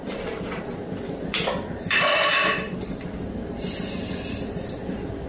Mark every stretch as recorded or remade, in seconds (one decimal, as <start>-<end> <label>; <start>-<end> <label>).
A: 0.0-5.3 recorded